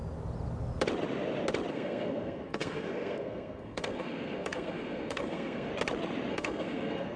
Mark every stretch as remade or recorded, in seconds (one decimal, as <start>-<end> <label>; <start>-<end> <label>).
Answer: 0.0-1.7 recorded; 1.7-5.7 remade; 5.7-6.3 recorded; 6.3-7.2 remade